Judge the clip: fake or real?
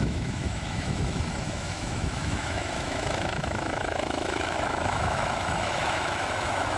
fake